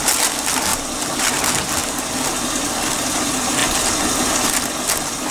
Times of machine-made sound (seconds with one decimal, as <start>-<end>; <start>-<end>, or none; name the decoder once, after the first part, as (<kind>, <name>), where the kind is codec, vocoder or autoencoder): none